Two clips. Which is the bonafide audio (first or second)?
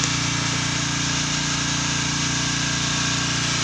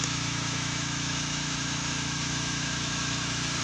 first